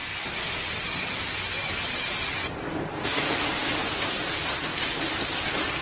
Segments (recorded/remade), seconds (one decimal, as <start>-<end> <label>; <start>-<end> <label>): 0.0-5.8 recorded